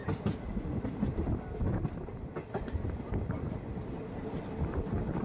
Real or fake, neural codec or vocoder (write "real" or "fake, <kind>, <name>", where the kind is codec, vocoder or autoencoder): real